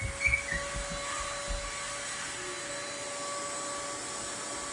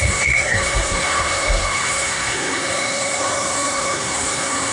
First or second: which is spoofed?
second